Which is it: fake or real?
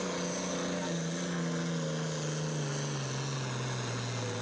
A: real